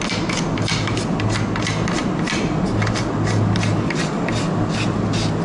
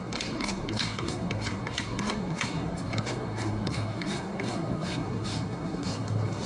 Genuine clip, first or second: first